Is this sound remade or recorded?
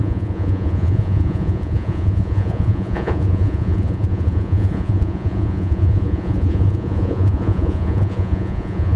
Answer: remade